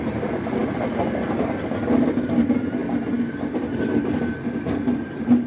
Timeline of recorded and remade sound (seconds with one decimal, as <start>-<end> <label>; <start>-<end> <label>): 0.0-5.5 recorded